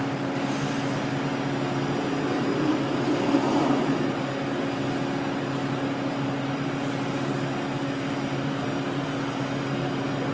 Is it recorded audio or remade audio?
recorded